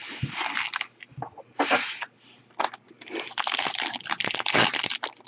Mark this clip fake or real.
real